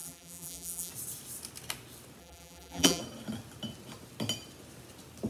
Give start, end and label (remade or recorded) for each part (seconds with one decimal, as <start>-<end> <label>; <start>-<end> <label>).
0.0-0.9 remade; 0.9-2.2 recorded; 2.2-3.0 remade; 3.0-5.3 recorded